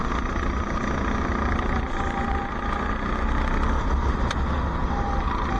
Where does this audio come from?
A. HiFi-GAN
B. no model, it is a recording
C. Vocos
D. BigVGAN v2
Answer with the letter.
B